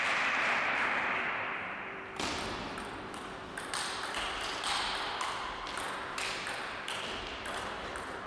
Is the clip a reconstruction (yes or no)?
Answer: yes